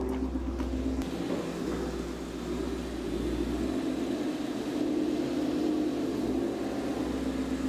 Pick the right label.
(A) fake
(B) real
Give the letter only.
B